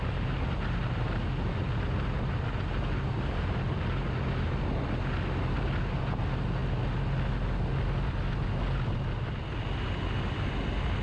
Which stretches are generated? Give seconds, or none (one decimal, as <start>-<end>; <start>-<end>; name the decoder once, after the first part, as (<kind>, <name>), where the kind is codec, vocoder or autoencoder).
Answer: none